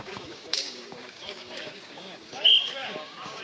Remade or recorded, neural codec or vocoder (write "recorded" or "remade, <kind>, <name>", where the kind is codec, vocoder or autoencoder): remade, codec, DAC